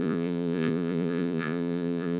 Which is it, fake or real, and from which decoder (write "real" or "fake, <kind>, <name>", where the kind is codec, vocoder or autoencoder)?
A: fake, vocoder, Vocos